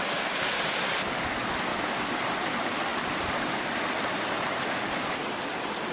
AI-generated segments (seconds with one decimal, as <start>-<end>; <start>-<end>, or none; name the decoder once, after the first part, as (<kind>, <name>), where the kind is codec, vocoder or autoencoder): 2.9-5.9 (vocoder, BigVGAN v2)

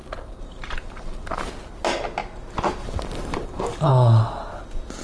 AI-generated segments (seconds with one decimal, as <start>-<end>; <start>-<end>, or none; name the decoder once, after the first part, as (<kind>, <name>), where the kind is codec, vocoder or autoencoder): 0.0-1.5 (vocoder, BigVGAN v2); 2.8-3.9

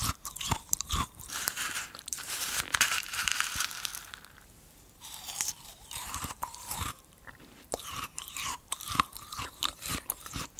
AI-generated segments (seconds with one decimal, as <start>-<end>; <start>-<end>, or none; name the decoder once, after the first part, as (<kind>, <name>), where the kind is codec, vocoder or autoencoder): 0.0-3.9 (vocoder, BigVGAN v2); 5.0-10.6